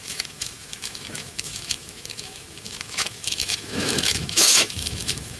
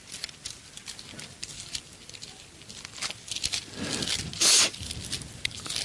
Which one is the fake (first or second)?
first